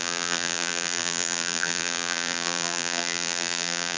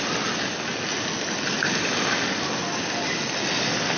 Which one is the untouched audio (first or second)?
second